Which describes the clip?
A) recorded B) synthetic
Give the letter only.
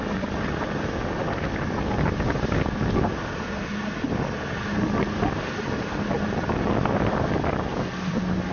A